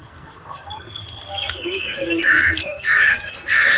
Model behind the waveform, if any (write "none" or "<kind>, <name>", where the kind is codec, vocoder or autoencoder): codec, SNAC